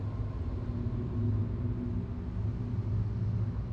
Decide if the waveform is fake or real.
real